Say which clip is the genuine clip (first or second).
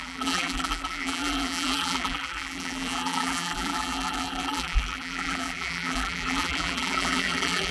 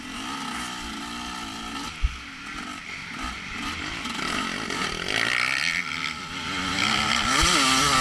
second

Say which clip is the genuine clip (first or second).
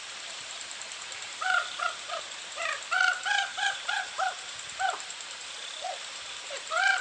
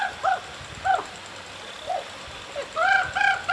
second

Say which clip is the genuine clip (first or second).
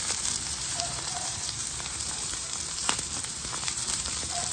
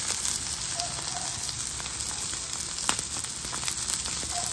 second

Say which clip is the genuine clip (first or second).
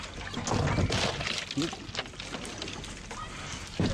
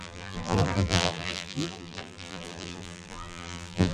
first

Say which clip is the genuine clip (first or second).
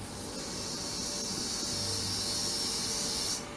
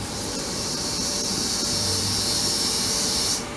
first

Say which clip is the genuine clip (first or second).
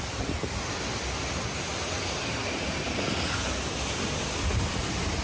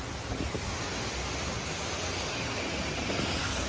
second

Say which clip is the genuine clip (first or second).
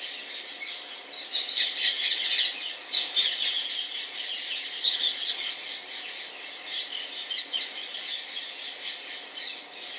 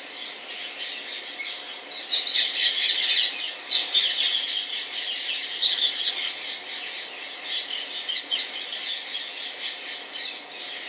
second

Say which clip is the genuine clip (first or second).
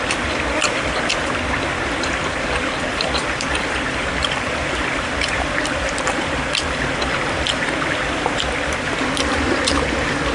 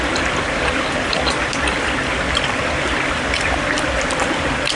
second